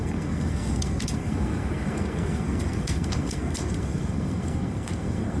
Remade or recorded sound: remade